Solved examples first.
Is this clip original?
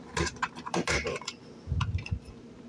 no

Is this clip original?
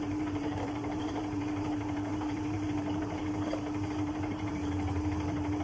no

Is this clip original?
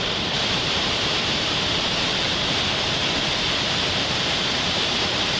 no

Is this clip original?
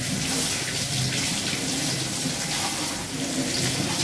yes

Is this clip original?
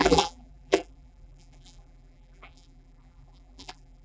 no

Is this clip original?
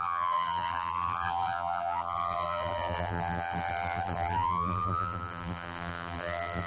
no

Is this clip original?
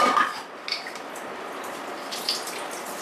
yes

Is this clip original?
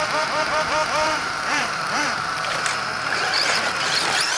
no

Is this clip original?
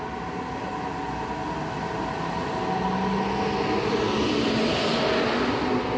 yes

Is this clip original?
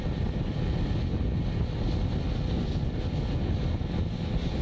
yes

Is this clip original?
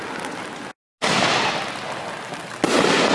yes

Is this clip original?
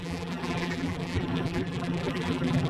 no